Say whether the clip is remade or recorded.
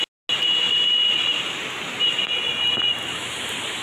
recorded